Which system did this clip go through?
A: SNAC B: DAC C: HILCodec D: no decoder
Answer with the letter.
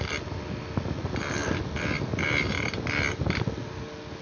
D